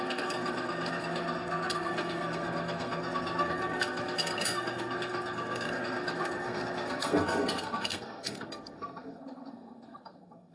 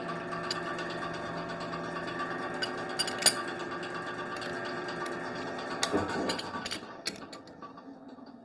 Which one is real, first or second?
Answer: second